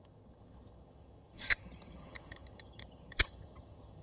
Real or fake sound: fake